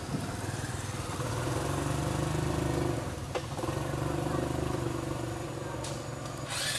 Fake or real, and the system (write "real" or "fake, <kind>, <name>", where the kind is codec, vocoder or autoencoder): real